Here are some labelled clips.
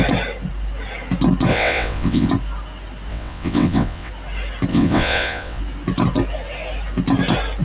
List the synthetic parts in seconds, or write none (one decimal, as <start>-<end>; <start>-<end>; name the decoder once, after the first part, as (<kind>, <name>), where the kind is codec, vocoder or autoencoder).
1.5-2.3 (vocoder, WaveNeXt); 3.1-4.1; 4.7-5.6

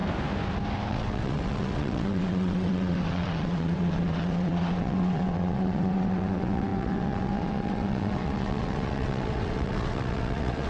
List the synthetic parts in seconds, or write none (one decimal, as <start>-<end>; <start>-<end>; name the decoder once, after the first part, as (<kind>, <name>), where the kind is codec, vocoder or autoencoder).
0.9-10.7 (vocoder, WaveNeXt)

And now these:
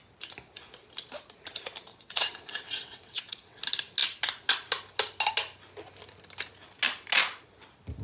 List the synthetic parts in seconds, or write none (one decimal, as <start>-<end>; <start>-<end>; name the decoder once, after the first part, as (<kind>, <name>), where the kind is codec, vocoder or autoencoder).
1.9-3.6 (vocoder, WaveNeXt)

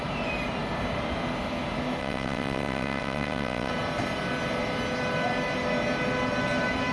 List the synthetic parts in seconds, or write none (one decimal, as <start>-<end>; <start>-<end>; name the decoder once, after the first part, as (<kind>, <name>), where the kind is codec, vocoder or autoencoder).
2.0-3.7 (vocoder, WaveNeXt)

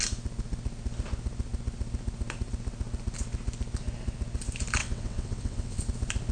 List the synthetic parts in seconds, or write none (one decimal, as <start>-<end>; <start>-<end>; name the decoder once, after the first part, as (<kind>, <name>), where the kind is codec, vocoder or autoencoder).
4.8-5.8 (vocoder, WaveNeXt)

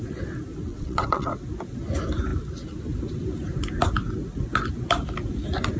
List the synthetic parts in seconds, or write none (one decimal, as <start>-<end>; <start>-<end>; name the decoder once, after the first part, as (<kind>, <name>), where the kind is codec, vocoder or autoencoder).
0.7-1.3 (vocoder, WaveNeXt)

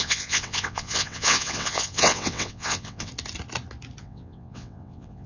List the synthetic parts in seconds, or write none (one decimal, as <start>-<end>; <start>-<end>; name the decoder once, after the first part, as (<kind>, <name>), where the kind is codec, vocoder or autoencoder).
0.0-3.1 (vocoder, WaveNeXt); 4.0-5.3